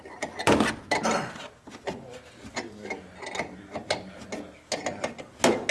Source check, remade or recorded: recorded